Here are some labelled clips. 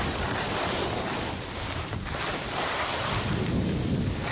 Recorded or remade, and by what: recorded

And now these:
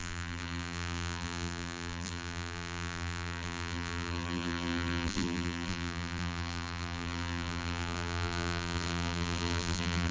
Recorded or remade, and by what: remade, vocoder, BigVGAN v2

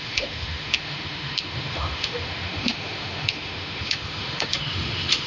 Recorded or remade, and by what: remade, autoencoder, DAC-VAE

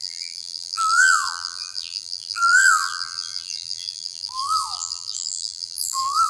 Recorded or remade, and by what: remade, vocoder, BigVGAN v2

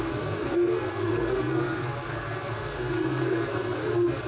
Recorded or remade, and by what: remade, codec, SNAC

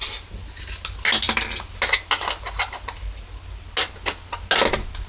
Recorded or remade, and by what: recorded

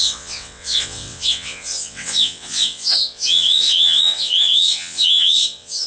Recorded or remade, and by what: remade, vocoder, WaveNeXt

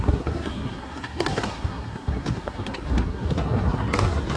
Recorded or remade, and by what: remade, codec, SNAC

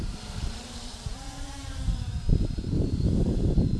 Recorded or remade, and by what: remade, vocoder, BigVGAN v2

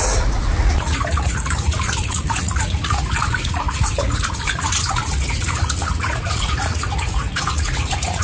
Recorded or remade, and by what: remade, vocoder, Vocos